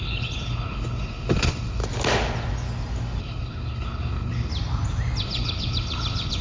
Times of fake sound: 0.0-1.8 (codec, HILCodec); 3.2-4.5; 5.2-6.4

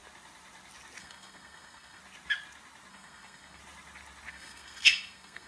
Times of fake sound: 1.0-2.0 (codec, SNAC); 2.9-3.6; 4.3-5.5

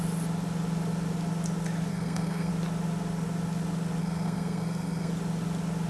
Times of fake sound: 1.9-2.5 (codec, SNAC); 4.0-5.1

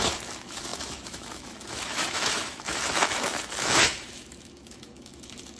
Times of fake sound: 0.0-5.6 (autoencoder, DAC-VAE)